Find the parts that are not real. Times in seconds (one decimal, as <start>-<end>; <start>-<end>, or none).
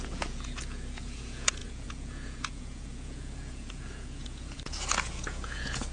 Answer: 0.0-5.9